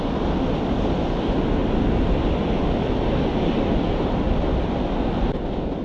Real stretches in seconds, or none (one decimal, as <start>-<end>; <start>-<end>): 0.0-5.8